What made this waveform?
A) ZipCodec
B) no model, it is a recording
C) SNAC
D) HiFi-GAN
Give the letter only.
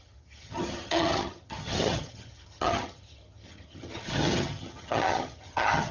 D